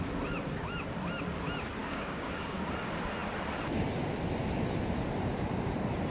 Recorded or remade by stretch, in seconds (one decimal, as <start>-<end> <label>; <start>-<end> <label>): 0.0-1.8 recorded; 1.8-2.6 remade; 2.6-6.1 recorded